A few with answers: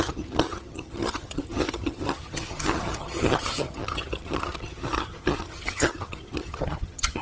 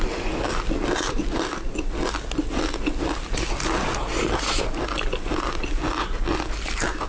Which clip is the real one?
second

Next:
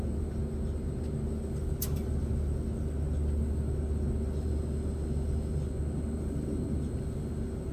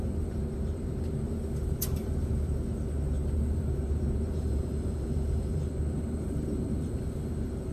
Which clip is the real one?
first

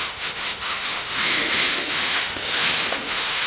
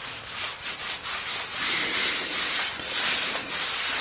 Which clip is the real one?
second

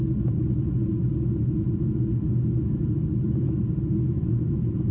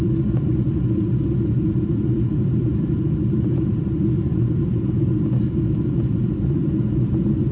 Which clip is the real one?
first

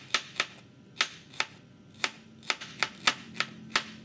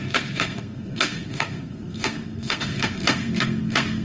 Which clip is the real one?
first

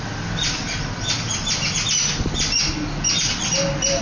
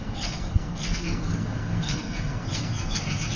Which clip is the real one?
first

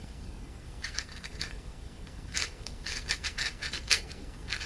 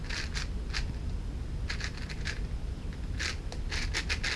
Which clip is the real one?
second